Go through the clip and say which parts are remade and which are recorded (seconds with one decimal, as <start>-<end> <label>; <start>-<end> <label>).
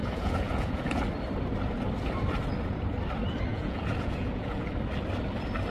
0.0-1.0 remade; 1.0-3.5 recorded; 3.5-4.7 remade; 4.7-5.7 recorded